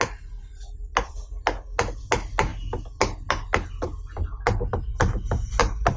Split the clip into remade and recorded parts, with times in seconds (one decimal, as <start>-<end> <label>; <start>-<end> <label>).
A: 0.0-6.0 recorded